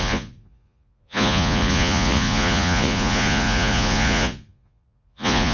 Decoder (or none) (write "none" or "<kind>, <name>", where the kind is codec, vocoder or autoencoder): vocoder, Vocos